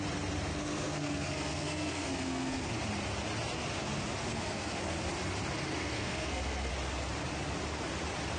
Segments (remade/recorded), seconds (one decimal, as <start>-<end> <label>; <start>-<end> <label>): 0.0-0.5 recorded; 0.5-2.7 remade; 2.7-4.3 recorded; 4.3-4.8 remade; 4.8-5.8 recorded; 5.8-6.7 remade; 6.7-8.4 recorded